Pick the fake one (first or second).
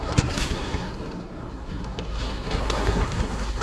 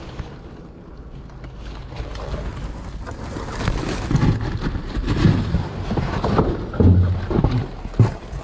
first